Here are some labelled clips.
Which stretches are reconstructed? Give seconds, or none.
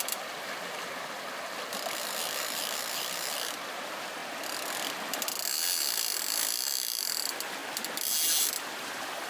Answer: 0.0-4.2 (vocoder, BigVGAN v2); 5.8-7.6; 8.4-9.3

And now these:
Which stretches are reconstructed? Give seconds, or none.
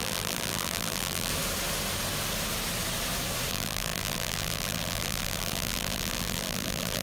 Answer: 0.0-1.3 (vocoder, BigVGAN v2); 3.5-7.0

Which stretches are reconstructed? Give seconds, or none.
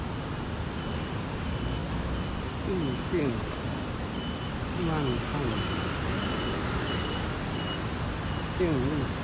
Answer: 1.8-3.3 (vocoder, BigVGAN v2)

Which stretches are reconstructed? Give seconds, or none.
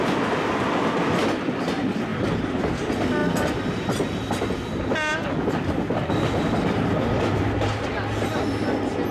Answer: 2.1-2.7 (vocoder, BigVGAN v2); 3.2-7.4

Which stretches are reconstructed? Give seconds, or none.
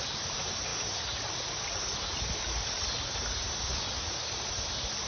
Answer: 0.0-0.7 (vocoder, BigVGAN v2); 3.8-5.1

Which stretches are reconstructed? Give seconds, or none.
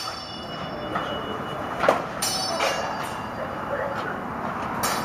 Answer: 0.9-3.9 (vocoder, BigVGAN v2)